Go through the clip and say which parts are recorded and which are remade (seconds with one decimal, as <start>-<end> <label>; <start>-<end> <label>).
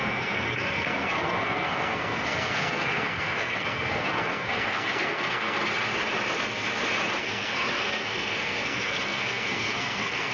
0.0-5.6 remade; 5.6-7.2 recorded; 7.2-10.3 remade